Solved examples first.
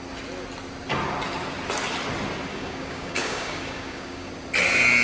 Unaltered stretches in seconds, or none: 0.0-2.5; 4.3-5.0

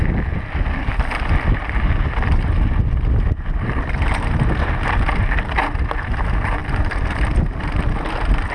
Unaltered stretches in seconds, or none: 0.0-8.5

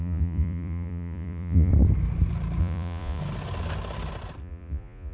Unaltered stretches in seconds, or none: 1.7-2.6; 3.2-4.4

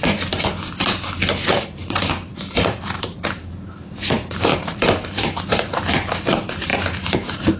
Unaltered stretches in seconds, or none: 0.5-1.3